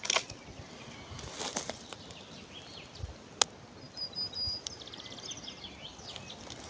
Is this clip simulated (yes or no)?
no